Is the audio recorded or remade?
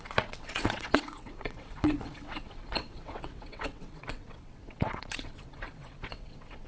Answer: remade